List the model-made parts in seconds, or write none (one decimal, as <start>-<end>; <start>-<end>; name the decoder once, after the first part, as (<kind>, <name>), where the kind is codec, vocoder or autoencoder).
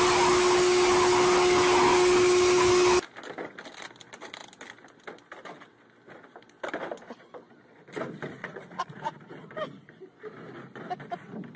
8.4-9.2 (vocoder, Vocos)